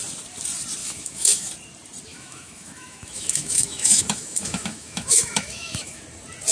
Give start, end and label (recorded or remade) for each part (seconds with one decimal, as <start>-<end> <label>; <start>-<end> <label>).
0.0-0.8 recorded; 0.8-1.5 remade; 1.5-2.1 recorded; 2.1-6.0 remade; 6.0-6.5 recorded